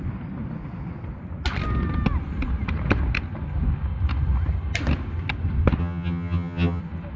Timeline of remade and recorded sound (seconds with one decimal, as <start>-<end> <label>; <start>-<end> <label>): 0.0-5.8 recorded; 5.8-6.8 remade; 6.8-7.2 recorded